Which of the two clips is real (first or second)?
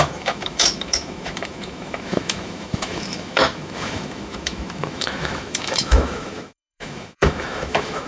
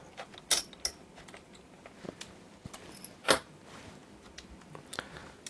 second